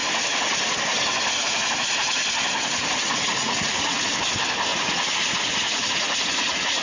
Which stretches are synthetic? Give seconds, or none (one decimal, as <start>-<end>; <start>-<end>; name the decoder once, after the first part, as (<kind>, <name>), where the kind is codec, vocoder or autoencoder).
3.4-4.1 (vocoder, Vocos); 4.7-6.8